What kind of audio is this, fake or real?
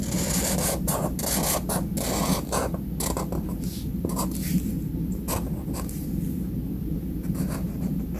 real